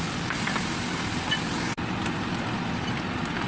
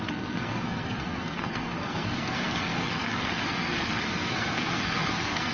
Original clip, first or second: first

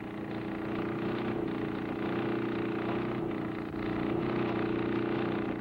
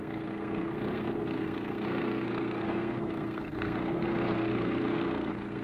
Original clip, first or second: first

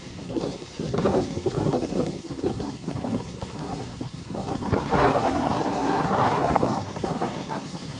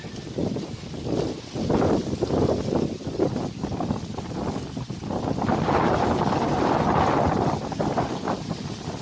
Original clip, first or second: second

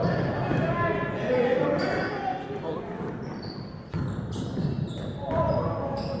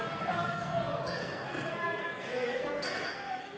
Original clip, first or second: first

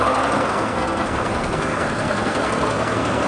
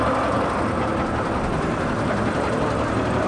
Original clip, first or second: second